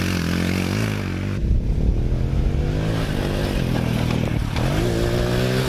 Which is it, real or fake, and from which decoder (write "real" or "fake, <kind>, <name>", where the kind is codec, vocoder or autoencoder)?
real